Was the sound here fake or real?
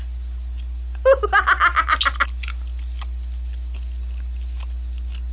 real